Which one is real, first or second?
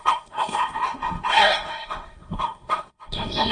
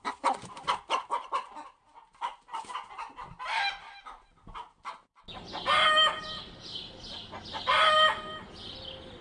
second